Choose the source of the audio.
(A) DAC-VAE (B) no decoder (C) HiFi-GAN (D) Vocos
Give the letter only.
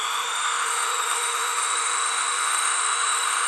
A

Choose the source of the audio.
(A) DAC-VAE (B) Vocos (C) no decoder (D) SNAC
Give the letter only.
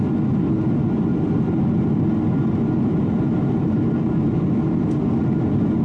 C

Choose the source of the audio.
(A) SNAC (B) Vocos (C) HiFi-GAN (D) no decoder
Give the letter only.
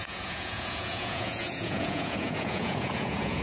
B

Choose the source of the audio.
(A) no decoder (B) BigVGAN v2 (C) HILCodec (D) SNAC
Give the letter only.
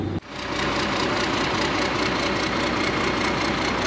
A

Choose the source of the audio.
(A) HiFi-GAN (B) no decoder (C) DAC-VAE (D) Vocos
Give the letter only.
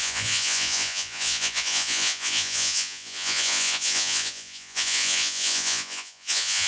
D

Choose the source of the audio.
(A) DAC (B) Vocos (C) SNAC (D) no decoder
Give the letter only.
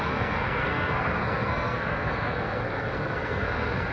C